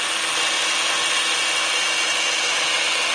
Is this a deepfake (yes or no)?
no